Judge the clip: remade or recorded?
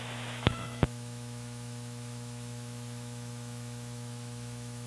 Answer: remade